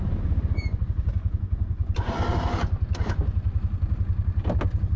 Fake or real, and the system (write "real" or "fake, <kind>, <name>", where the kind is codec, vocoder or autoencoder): real